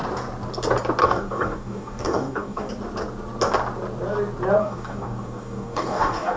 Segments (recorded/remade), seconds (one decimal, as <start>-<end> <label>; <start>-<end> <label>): 0.0-1.0 recorded; 1.0-2.7 remade; 2.7-4.6 recorded; 4.6-6.4 remade